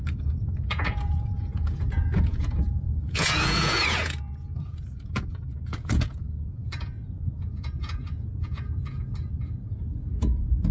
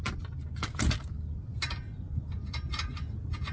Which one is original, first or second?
second